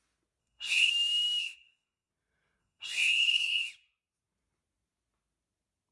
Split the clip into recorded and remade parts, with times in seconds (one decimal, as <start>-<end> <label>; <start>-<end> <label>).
0.0-0.4 recorded; 0.4-0.9 remade; 0.9-1.4 recorded; 1.4-2.1 remade; 2.1-2.6 recorded; 2.6-3.7 remade; 3.7-5.9 recorded